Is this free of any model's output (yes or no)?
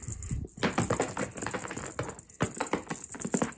yes